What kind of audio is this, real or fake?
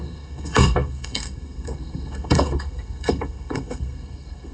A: fake